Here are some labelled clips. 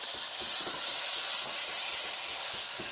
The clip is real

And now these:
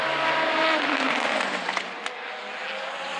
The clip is real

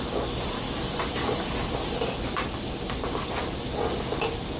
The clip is real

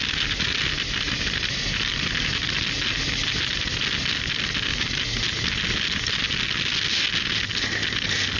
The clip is real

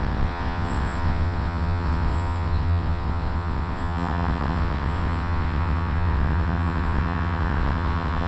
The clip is fake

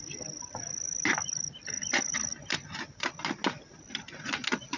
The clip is real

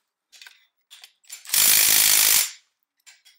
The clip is real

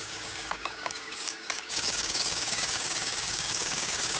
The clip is fake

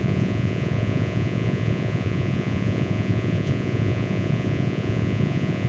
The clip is fake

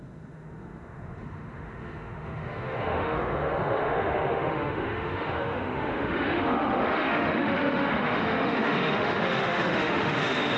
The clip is fake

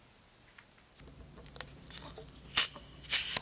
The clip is real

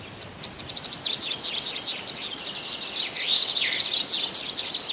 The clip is real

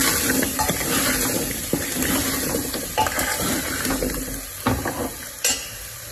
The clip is real